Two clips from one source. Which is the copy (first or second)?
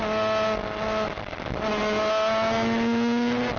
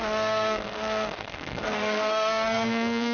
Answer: second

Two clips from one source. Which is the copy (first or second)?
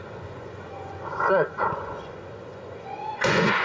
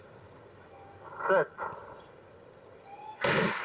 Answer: first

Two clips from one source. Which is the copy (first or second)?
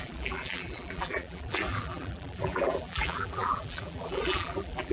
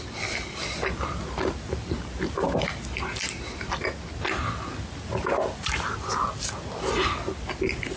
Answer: first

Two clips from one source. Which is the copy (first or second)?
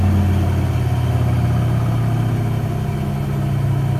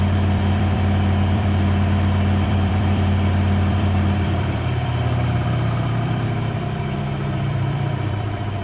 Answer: second